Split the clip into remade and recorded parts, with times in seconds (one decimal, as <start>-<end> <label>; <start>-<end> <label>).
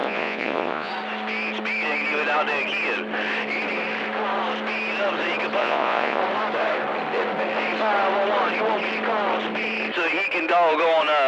0.0-0.9 remade; 0.9-5.6 recorded; 5.6-6.2 remade; 6.2-11.3 recorded